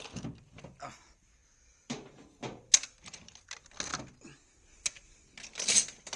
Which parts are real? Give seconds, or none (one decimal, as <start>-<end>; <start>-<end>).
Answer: 0.0-6.2